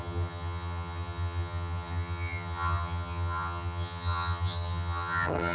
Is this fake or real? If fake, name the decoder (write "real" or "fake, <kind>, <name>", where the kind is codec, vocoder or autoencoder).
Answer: fake, vocoder, HiFi-GAN